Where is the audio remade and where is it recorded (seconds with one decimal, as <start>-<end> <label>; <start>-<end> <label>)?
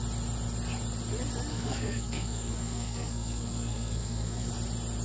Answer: 0.0-1.5 recorded; 1.5-4.5 remade; 4.5-5.0 recorded